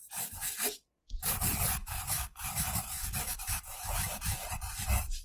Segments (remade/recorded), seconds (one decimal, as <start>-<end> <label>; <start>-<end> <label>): 0.0-1.8 recorded; 1.8-4.4 remade; 4.4-5.2 recorded

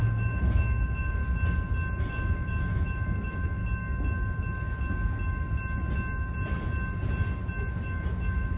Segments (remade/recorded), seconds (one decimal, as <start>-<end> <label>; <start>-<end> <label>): 0.0-1.2 remade; 1.2-2.0 recorded; 2.0-3.6 remade; 3.6-7.7 recorded; 7.7-8.6 remade

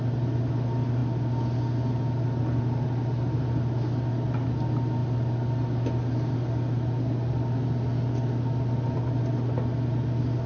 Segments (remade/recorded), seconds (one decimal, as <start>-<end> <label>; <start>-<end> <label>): 0.0-10.5 recorded

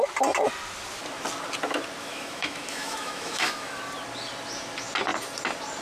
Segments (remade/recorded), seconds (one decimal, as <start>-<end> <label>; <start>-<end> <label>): 0.0-2.0 recorded; 2.0-3.8 remade; 3.8-5.8 recorded

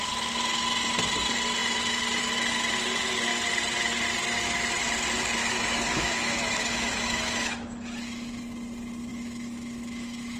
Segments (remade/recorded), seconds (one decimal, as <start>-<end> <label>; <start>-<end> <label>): 0.0-5.4 recorded; 5.4-8.4 remade; 8.4-9.1 recorded; 9.1-10.4 remade

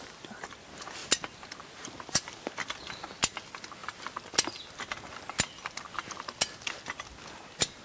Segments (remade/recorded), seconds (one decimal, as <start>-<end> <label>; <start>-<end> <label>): 0.0-7.8 recorded

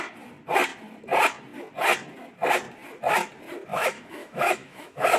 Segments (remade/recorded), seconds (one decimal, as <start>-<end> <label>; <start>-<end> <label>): 0.0-3.7 recorded; 3.7-5.2 remade